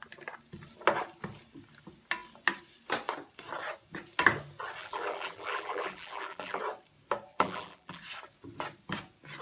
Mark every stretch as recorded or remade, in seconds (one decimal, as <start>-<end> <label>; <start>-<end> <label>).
0.0-4.8 recorded; 4.8-6.6 remade; 6.6-7.3 recorded; 7.3-8.0 remade; 8.0-9.4 recorded